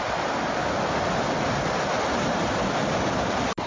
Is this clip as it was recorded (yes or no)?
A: yes